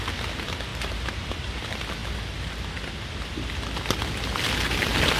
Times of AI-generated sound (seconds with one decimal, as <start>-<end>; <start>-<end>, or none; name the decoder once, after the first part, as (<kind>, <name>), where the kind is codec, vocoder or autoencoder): 0.7-1.6 (vocoder, BigVGAN v2)